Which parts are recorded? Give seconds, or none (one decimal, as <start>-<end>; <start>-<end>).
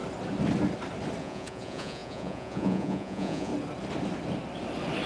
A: 0.0-1.2; 3.5-5.1